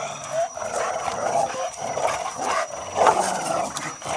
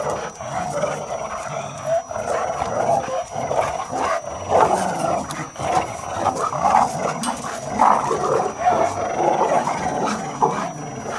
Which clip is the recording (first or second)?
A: second